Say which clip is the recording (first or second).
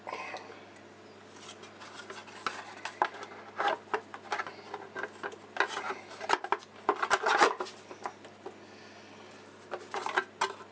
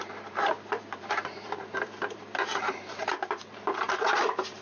first